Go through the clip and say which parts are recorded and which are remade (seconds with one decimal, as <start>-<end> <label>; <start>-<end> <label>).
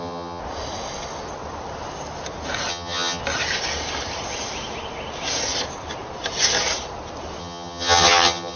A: 0.0-0.4 remade; 0.4-2.7 recorded; 2.7-3.2 remade; 3.2-7.4 recorded; 7.4-8.6 remade